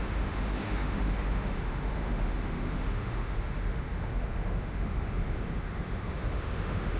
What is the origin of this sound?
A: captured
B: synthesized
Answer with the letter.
B